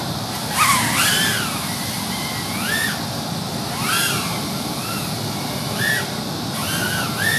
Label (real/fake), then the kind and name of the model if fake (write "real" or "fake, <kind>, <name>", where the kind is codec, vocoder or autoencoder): real